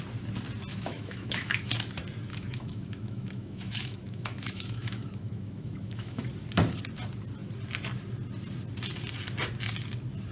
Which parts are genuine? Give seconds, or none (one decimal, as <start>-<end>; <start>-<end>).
0.0-0.7; 1.7-2.3; 6.3-10.3